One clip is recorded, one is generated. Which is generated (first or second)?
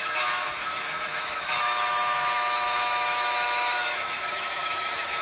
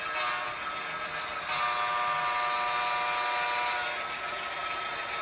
first